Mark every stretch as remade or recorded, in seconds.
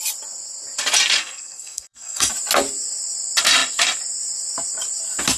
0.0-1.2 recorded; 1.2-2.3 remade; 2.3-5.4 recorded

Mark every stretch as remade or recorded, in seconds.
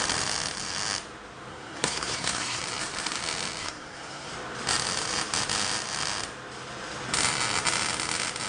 0.0-1.5 recorded; 1.5-2.6 remade; 2.6-3.6 recorded; 3.6-4.3 remade; 4.3-8.5 recorded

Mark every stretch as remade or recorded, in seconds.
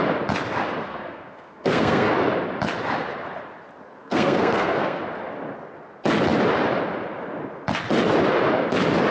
0.0-0.8 recorded; 0.8-2.1 remade; 2.1-4.0 recorded; 4.0-5.0 remade; 5.0-9.1 recorded